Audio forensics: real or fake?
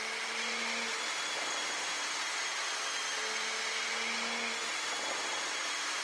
real